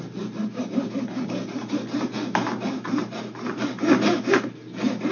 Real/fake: real